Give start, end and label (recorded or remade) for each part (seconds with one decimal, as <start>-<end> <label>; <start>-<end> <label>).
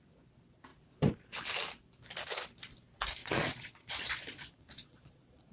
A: 0.0-3.2 recorded; 3.2-5.5 remade